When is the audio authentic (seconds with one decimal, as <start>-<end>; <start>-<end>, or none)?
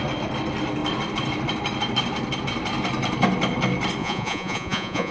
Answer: 0.0-4.0